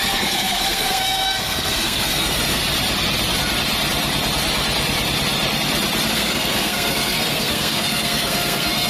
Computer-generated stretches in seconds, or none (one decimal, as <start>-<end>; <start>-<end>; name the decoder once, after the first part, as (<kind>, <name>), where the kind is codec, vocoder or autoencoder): 0.0-2.6 (codec, SNAC); 6.1-8.9